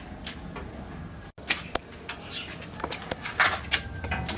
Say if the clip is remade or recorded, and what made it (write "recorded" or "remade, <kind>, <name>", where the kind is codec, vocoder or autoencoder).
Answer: recorded